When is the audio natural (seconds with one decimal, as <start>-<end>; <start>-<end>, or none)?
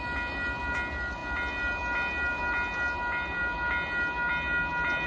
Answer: 0.0-5.1